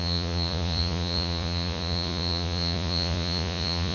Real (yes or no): no